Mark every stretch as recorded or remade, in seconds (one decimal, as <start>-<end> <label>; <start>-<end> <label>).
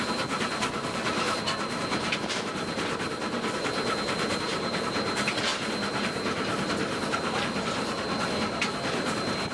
0.0-9.5 recorded